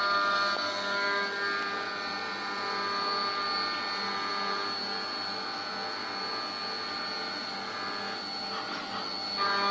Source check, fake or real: real